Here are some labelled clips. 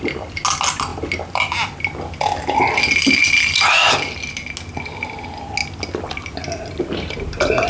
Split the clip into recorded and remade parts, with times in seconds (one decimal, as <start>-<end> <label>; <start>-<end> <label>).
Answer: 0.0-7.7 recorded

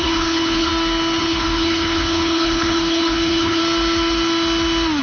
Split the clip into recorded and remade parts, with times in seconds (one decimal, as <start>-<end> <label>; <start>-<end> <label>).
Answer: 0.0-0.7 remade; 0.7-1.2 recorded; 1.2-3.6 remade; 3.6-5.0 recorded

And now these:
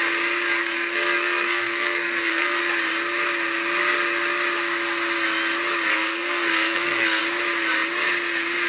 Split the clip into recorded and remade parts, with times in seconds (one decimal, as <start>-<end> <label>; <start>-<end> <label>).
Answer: 0.0-0.6 recorded; 0.6-2.6 remade; 2.6-5.9 recorded; 5.9-7.2 remade; 7.2-8.7 recorded

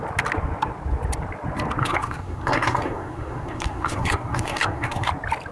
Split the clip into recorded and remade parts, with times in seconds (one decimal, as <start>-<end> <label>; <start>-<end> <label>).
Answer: 0.0-1.8 recorded; 1.8-5.1 remade; 5.1-5.5 recorded